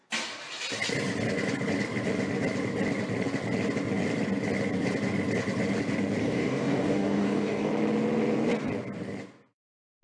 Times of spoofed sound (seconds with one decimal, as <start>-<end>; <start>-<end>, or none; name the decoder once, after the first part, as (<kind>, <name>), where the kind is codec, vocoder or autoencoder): 6.2-7.7 (codec, DAC)